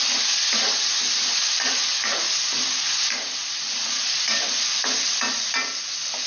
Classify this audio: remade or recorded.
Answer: recorded